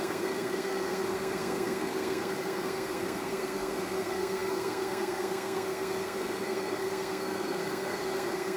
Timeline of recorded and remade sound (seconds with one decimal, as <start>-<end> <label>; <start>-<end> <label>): 0.0-8.6 remade